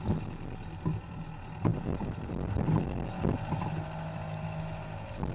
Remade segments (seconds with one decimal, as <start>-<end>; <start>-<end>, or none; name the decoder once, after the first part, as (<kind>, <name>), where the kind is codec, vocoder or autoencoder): 1.7-2.6 (vocoder, BigVGAN v2)

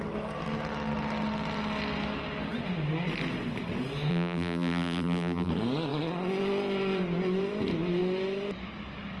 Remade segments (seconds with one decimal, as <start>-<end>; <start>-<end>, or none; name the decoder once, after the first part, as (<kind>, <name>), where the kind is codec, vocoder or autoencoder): 4.1-5.5 (vocoder, BigVGAN v2)

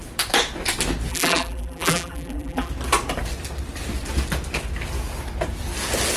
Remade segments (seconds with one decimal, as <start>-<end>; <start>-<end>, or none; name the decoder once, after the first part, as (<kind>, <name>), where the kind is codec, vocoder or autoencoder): 1.1-2.7 (vocoder, BigVGAN v2)

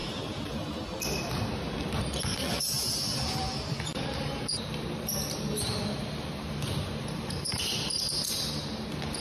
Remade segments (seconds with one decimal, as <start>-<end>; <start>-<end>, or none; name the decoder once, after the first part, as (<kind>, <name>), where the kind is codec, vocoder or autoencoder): 0.0-1.0 (vocoder, BigVGAN v2); 2.3-7.5

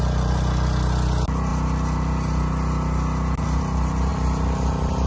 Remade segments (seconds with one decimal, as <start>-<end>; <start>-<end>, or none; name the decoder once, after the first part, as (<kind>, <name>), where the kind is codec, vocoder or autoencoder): 4.1-5.1 (vocoder, BigVGAN v2)

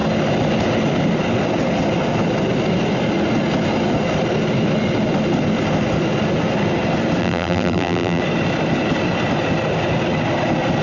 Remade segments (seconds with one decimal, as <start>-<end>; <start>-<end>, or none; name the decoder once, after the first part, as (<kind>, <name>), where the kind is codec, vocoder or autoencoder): 7.2-8.2 (vocoder, BigVGAN v2)

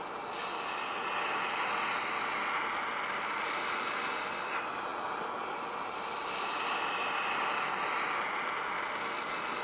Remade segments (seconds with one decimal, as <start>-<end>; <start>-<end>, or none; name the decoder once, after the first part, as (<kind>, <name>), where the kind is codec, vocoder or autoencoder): none